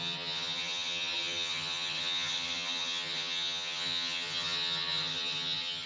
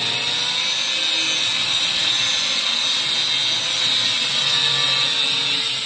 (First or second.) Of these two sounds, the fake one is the first